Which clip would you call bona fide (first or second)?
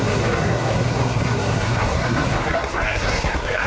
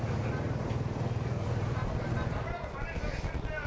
second